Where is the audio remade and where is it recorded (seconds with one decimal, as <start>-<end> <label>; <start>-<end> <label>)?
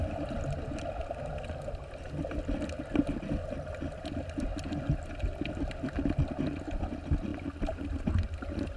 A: 0.0-8.8 recorded